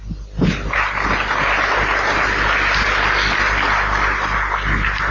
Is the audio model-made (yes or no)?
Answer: no